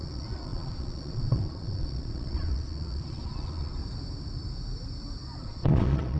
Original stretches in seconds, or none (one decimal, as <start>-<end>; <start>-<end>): 3.8-5.4